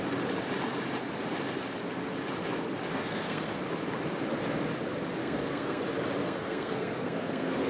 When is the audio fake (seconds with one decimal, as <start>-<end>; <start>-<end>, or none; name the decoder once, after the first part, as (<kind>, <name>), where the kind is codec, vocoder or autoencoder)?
2.9-3.6 (codec, SNAC); 5.2-5.8; 6.2-7.7

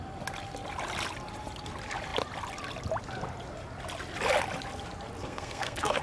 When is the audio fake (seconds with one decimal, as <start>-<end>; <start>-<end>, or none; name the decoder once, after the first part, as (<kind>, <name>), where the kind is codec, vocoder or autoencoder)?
5.2-6.0 (codec, SNAC)